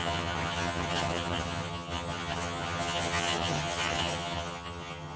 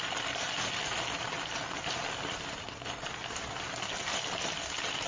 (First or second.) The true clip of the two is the second